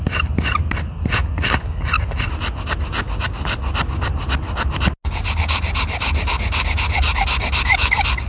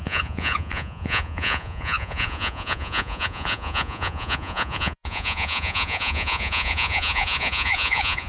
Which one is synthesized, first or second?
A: second